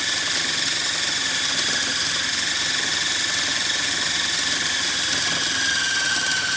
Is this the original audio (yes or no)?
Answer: yes